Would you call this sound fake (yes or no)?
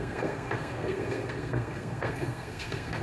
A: yes